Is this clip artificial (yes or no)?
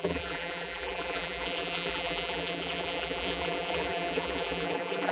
yes